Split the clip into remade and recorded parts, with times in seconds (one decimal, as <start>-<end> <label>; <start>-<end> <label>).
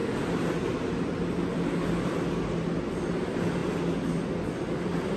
0.0-5.2 recorded